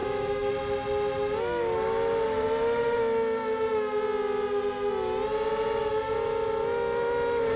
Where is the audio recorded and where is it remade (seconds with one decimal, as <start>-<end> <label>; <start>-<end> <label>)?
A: 0.0-0.5 remade; 0.5-7.6 recorded